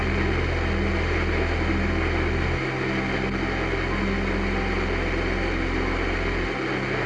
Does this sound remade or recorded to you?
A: recorded